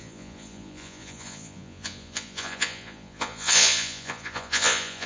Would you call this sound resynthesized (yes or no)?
yes